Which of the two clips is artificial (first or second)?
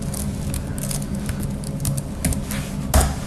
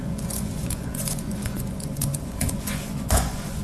second